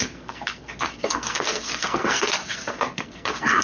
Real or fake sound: fake